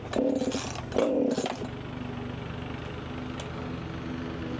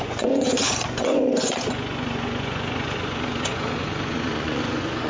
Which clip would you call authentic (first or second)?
first